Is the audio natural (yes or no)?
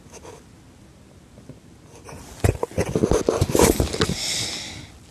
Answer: yes